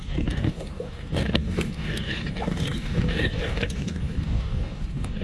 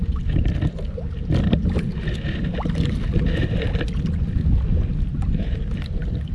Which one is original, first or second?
second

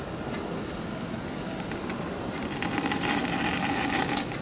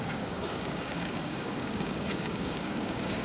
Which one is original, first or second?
first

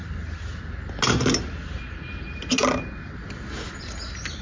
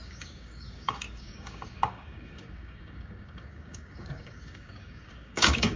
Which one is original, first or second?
first